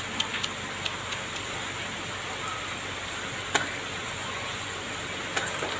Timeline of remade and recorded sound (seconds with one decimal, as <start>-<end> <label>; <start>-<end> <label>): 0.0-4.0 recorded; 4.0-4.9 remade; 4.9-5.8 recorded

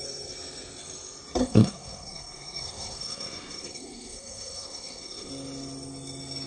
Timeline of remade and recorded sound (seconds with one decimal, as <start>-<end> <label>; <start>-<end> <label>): 0.0-1.4 recorded; 1.4-5.3 remade; 5.3-6.5 recorded

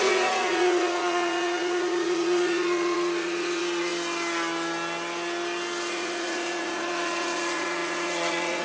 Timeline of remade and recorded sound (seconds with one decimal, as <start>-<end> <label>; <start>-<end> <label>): 0.0-3.9 remade; 3.9-5.9 recorded; 5.9-8.6 remade